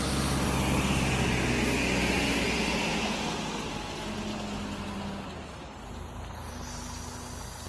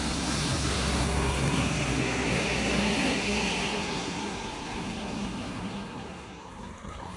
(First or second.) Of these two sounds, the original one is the first